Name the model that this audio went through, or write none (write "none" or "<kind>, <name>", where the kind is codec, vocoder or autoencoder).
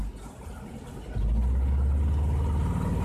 none